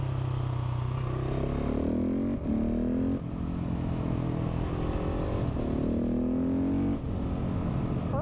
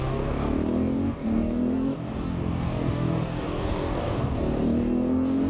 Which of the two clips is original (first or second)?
first